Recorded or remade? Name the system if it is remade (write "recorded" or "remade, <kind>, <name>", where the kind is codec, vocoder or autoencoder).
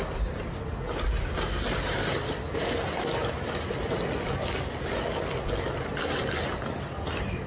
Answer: recorded